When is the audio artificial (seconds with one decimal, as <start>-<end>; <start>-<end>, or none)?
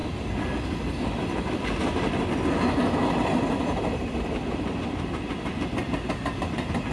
none